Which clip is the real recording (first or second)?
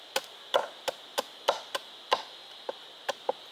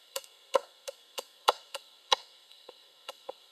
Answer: first